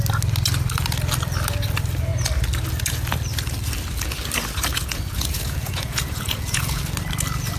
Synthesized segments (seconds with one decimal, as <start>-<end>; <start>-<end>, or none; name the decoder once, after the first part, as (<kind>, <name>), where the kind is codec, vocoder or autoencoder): 4.7-6.8 (vocoder, Vocos)